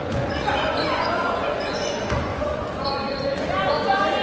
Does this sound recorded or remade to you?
remade